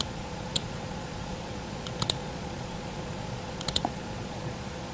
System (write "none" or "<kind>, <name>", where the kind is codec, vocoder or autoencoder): vocoder, Vocos